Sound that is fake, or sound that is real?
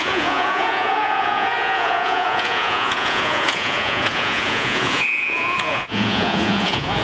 fake